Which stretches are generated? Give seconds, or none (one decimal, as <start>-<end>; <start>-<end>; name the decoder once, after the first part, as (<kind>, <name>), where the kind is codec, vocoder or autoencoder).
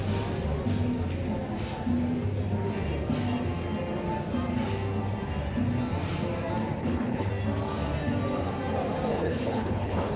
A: 6.8-7.3 (codec, HILCodec); 9.1-10.2